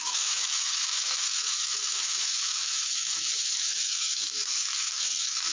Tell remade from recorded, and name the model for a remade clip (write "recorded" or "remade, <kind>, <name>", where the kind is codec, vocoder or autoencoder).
remade, autoencoder, DAC-VAE